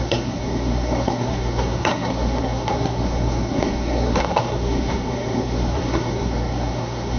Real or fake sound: fake